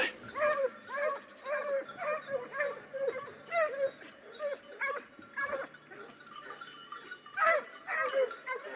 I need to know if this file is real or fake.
real